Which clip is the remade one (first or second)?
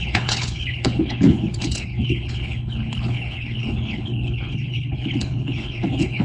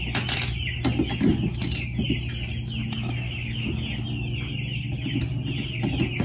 first